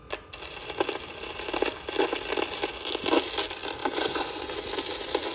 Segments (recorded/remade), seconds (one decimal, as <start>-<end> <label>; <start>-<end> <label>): 0.0-3.8 recorded; 3.8-4.5 remade; 4.5-5.3 recorded